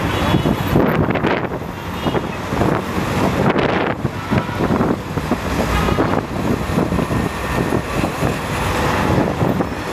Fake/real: real